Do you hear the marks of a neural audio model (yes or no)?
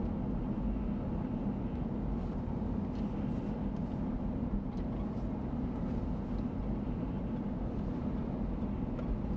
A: no